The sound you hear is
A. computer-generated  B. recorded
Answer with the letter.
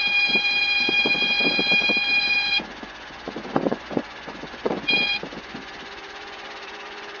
A